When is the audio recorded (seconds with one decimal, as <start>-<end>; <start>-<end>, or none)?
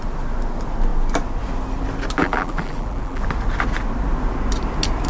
0.0-2.2; 3.2-5.1